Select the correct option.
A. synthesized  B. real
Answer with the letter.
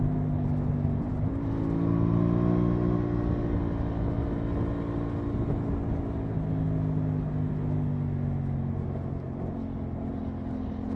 B